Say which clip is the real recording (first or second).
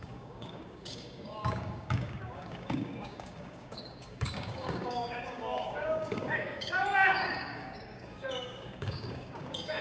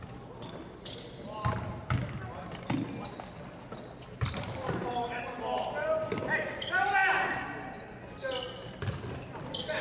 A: second